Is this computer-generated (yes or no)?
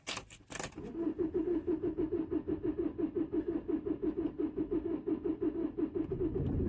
no